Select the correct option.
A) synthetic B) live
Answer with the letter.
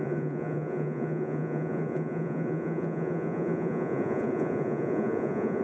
A